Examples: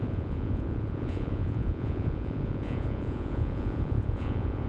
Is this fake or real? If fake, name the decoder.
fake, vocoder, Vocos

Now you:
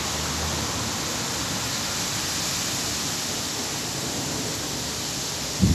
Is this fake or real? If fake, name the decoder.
real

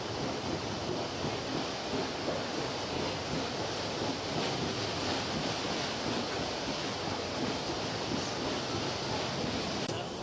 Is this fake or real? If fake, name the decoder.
real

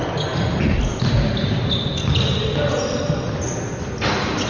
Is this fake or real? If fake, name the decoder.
real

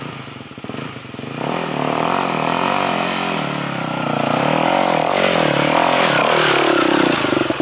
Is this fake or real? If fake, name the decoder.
real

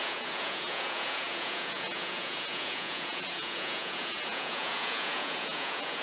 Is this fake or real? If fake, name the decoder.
fake, vocoder, Vocos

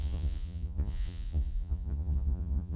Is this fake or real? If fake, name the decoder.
fake, vocoder, Vocos